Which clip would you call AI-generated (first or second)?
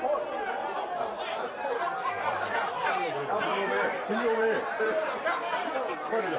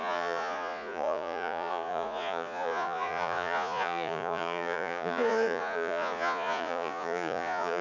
second